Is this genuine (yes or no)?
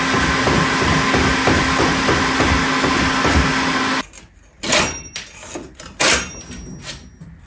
yes